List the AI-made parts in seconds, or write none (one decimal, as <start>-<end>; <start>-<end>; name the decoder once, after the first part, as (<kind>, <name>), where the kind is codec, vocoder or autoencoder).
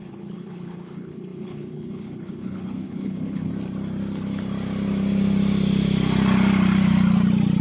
0.0-3.5 (codec, HILCodec)